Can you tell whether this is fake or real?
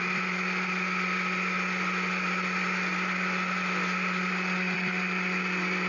real